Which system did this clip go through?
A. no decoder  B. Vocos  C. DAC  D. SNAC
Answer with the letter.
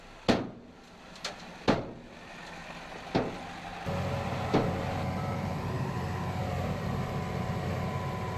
A